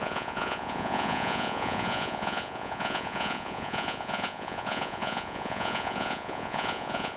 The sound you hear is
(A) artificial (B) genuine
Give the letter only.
A